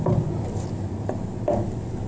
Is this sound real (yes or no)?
yes